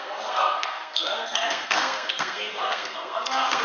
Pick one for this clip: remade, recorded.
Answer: remade